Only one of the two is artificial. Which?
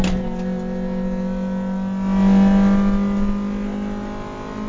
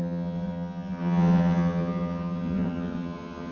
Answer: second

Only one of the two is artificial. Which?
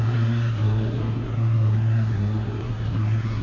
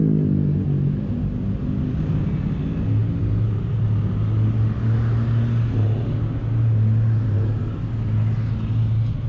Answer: first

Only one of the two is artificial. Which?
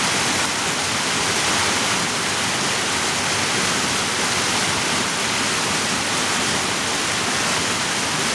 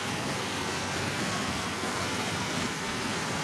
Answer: second